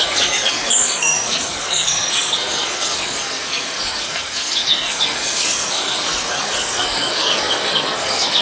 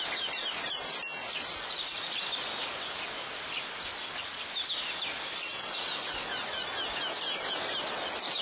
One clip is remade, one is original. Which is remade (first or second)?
first